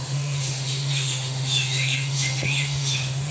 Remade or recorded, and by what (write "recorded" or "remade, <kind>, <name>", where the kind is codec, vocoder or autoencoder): remade, autoencoder, DAC-VAE